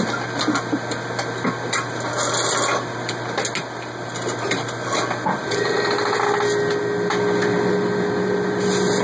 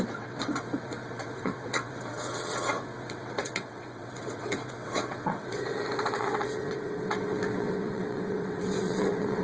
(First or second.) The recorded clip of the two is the first